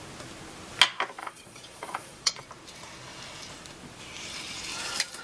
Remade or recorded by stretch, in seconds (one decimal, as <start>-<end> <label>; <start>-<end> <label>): 0.0-1.2 recorded; 1.2-2.4 remade; 2.4-5.2 recorded